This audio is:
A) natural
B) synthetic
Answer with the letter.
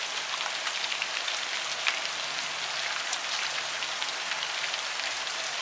A